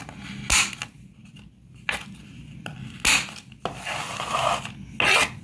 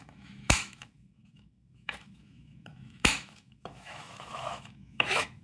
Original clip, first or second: first